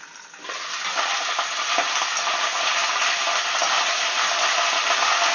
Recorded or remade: recorded